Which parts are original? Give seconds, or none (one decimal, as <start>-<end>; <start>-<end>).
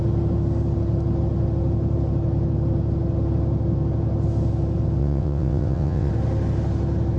0.0-5.0; 6.1-7.2